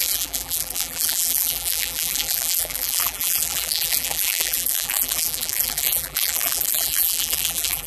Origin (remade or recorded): remade